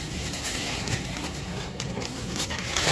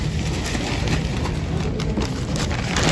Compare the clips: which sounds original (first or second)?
second